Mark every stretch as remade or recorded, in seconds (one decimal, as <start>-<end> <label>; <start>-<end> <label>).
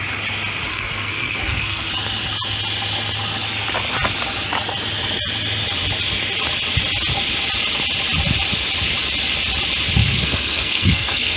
0.0-0.7 recorded; 0.7-1.9 remade; 1.9-10.0 recorded; 10.0-11.4 remade